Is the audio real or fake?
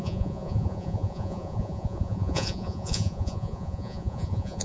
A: fake